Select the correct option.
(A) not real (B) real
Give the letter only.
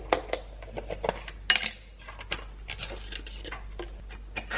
B